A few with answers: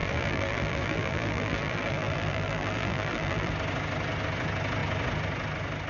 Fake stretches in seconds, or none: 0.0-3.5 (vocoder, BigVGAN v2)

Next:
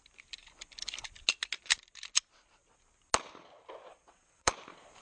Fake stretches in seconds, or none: 3.9-4.5 (vocoder, WaveNeXt)

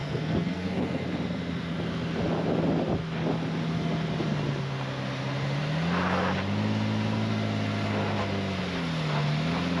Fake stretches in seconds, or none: 0.0-1.0 (codec, SNAC)

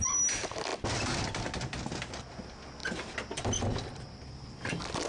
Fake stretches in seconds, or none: none

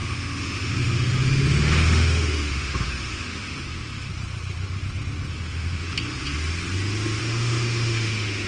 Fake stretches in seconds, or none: 0.0-4.1 (autoencoder, DAC-VAE); 5.3-5.9; 7.2-8.5

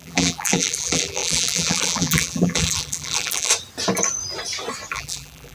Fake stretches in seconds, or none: 0.0-3.5 (vocoder, BigVGAN v2); 4.9-5.5